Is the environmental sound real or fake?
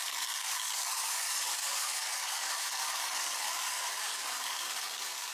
fake